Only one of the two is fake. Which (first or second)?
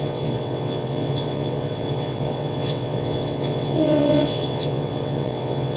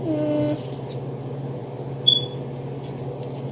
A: first